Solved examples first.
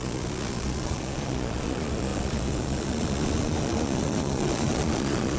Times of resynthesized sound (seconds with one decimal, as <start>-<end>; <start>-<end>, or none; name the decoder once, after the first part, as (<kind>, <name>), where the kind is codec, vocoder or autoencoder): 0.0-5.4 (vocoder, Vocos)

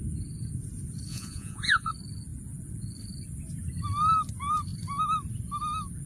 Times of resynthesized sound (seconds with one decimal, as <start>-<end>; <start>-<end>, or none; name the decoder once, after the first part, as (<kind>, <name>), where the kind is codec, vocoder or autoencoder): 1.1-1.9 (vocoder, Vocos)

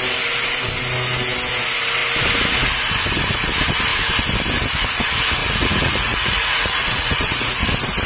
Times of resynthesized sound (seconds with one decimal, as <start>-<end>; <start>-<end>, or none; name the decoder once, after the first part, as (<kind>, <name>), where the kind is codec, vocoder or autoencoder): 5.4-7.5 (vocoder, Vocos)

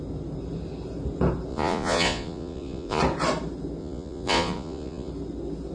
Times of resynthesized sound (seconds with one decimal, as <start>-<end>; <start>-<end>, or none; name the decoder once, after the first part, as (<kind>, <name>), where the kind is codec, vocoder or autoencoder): 1.5-3.0 (vocoder, Vocos); 3.8-5.1

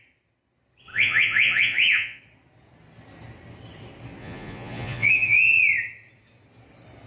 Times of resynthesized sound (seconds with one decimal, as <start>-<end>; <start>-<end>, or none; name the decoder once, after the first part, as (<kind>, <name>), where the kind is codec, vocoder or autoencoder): 0.9-2.2 (vocoder, Vocos); 4.2-5.6

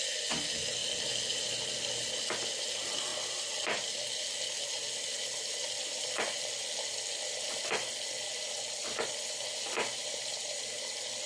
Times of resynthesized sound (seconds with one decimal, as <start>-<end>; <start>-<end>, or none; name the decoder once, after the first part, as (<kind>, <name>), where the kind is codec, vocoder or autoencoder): none

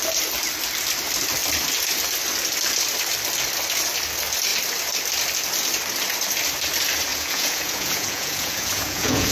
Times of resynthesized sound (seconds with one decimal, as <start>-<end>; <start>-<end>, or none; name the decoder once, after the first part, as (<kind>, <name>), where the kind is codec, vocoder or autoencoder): 7.1-9.3 (vocoder, Vocos)

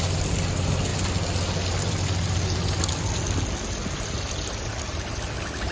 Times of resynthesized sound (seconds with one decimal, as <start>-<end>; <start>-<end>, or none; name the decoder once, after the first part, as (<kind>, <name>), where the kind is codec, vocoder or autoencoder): none